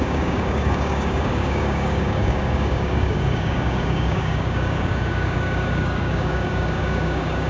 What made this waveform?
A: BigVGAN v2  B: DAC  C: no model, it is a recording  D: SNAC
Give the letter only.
B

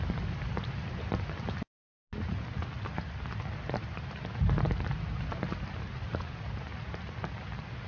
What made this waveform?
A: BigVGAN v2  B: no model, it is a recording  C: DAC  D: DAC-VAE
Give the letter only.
B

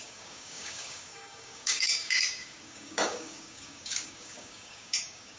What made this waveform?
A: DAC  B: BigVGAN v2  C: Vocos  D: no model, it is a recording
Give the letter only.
A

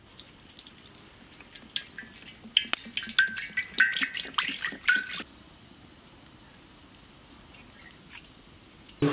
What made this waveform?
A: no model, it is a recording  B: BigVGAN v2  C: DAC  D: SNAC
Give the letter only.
A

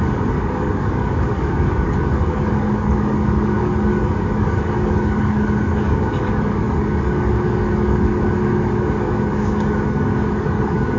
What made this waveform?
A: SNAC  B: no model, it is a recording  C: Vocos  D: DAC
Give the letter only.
D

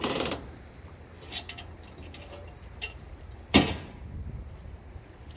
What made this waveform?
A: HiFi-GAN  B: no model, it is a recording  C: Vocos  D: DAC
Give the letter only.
B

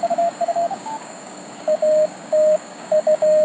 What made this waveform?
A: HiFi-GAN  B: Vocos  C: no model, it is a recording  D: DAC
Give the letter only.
D